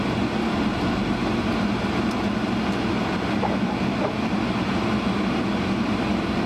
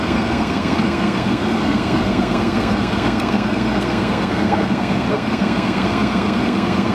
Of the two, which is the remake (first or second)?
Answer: second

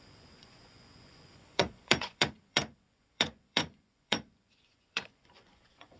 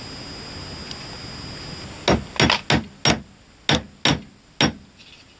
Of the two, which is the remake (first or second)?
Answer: first